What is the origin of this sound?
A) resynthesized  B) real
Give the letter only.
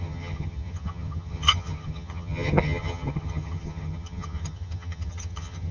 A